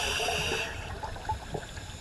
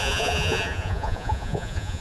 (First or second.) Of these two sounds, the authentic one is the first